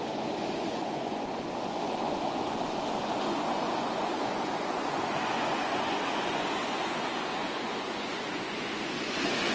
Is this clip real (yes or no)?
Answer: no